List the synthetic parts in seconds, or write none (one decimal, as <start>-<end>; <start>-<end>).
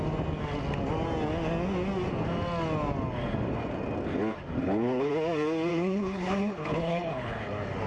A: 4.6-5.1; 5.7-7.4